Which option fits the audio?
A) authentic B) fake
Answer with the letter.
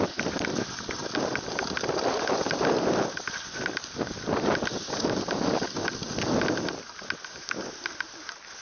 A